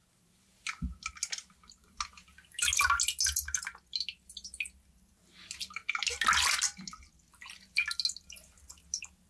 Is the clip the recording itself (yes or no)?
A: yes